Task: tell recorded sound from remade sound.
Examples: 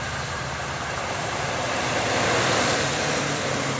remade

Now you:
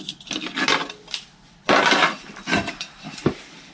recorded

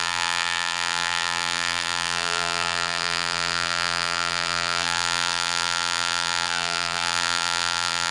remade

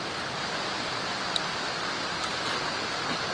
recorded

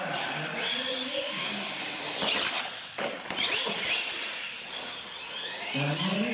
recorded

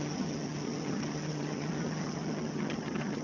remade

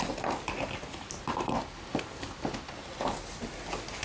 recorded